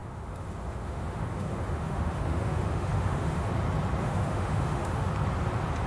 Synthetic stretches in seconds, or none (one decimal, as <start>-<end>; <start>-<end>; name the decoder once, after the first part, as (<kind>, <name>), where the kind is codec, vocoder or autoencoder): 0.0-3.5 (autoencoder, DAC-VAE); 4.0-5.1